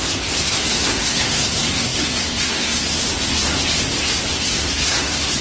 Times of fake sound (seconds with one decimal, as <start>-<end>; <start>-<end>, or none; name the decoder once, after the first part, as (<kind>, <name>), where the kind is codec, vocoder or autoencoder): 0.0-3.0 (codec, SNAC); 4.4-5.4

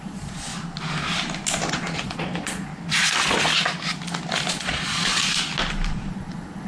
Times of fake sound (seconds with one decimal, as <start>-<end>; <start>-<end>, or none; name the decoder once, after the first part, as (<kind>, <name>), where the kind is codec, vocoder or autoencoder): 0.0-0.5 (vocoder, Vocos); 1.7-2.7; 4.5-5.2; 5.9-6.7

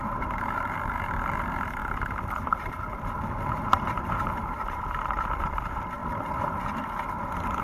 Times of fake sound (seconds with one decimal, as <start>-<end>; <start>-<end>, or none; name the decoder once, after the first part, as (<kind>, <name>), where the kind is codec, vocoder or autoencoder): 0.0-1.8 (vocoder, BigVGAN v2); 3.5-6.0